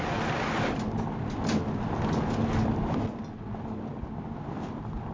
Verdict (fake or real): real